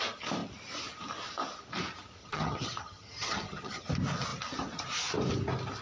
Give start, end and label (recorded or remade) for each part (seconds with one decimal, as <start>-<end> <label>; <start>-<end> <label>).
0.0-2.2 recorded; 2.2-3.9 remade; 3.9-5.8 recorded